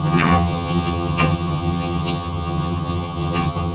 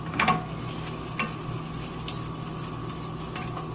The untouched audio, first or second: second